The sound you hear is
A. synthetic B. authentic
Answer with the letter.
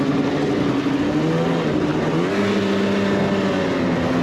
B